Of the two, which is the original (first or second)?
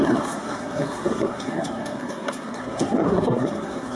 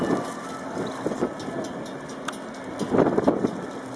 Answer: second